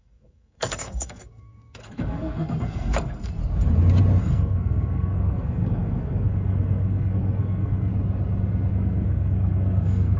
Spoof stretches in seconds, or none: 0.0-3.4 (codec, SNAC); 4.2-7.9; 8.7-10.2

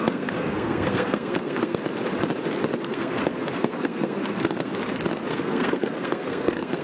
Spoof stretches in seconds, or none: 0.0-1.8 (codec, SNAC); 2.8-4.7; 5.3-6.8